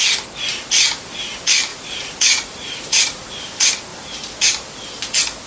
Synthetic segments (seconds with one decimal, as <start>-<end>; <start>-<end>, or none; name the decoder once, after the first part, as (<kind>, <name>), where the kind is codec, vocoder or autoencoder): 1.7-3.3 (vocoder, Vocos)